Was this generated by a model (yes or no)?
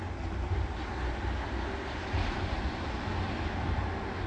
no